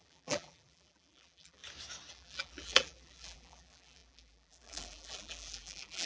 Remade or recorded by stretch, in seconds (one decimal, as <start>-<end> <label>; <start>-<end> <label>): 0.0-1.6 remade; 1.6-2.1 recorded; 2.1-6.1 remade